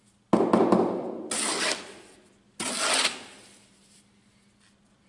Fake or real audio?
real